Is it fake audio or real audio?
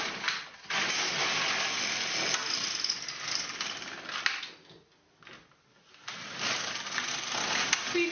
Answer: real